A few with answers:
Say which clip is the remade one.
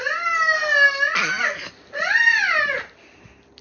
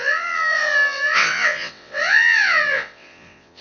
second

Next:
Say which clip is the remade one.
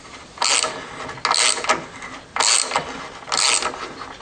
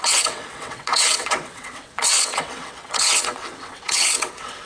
second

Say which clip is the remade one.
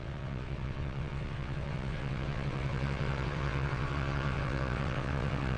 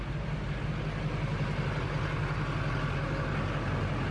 first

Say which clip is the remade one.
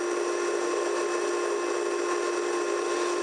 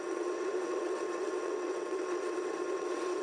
second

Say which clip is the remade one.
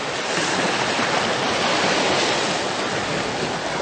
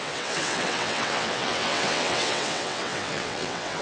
second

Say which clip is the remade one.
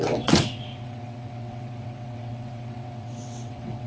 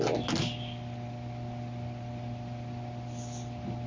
first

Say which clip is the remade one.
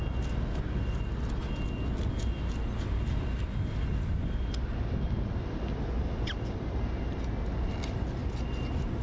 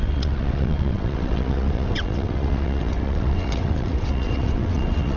second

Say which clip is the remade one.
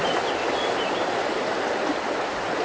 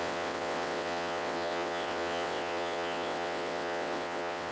second